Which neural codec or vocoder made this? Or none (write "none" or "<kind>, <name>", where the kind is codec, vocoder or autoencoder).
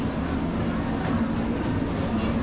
none